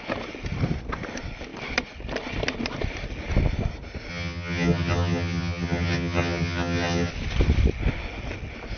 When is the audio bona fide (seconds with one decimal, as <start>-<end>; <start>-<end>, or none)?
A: 0.0-4.1; 7.1-8.8